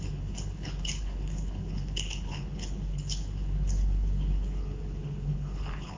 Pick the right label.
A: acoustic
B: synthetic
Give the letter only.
B